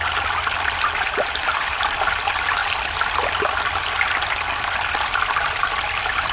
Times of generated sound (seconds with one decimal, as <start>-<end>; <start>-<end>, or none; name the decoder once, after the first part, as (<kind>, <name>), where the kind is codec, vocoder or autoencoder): none